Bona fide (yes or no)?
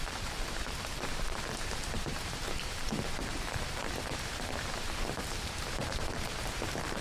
no